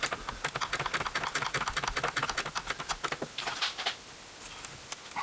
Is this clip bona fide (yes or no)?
yes